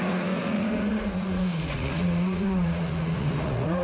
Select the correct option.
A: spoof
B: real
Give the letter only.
A